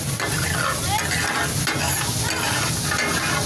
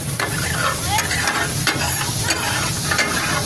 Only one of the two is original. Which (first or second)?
first